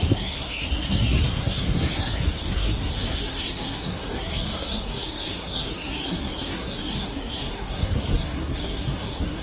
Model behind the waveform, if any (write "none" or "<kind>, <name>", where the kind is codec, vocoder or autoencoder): codec, SNAC